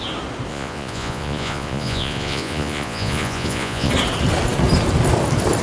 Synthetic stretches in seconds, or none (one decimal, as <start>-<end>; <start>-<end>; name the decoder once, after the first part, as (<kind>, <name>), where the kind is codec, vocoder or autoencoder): 0.5-3.9 (vocoder, Vocos)